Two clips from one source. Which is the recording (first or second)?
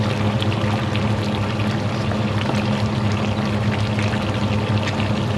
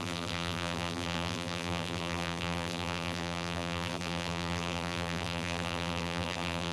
first